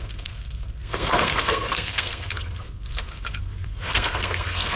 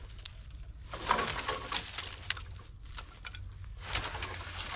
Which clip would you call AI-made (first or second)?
first